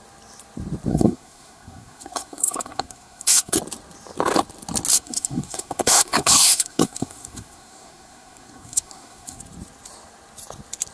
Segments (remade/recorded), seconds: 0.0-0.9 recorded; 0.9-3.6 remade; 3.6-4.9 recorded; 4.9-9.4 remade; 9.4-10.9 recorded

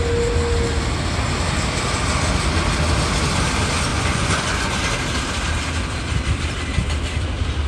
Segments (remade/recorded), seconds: 0.0-3.9 recorded; 3.9-4.8 remade; 4.8-7.7 recorded

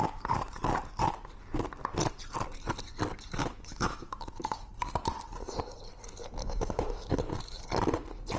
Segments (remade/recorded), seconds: 0.0-3.4 recorded; 3.4-4.7 remade; 4.7-6.4 recorded; 6.4-7.2 remade; 7.2-8.4 recorded

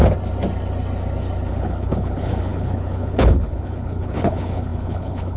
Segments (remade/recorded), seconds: 0.0-1.5 recorded; 1.5-5.4 remade

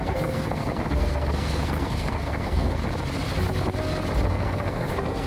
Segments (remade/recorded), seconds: 0.0-2.8 remade; 2.8-4.3 recorded; 4.3-5.3 remade